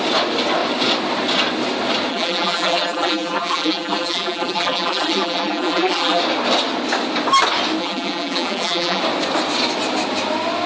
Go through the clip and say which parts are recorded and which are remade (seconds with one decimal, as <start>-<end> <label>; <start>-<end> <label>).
0.0-2.1 recorded; 2.1-6.2 remade; 6.2-7.8 recorded; 7.8-9.0 remade; 9.0-10.7 recorded